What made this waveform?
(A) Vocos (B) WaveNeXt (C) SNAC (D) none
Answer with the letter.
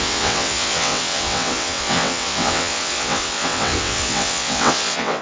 B